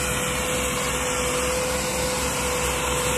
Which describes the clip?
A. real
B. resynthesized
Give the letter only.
A